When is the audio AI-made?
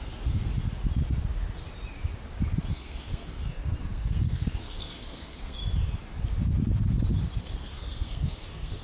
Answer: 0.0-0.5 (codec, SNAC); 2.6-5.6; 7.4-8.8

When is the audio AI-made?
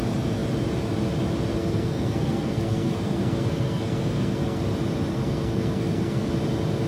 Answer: 1.5-4.6 (codec, SNAC); 5.1-6.3